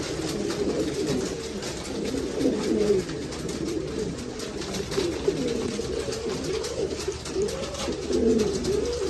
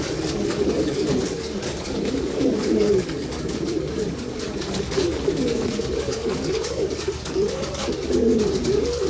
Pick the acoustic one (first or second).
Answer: first